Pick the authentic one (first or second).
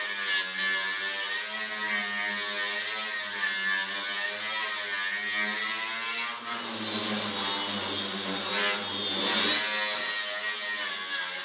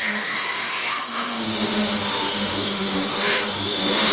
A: first